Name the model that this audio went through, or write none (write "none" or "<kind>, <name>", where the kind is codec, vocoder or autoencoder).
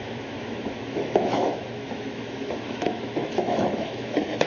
autoencoder, DAC-VAE